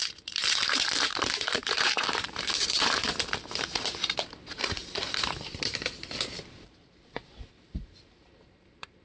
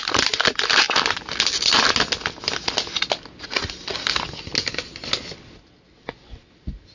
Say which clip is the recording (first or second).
second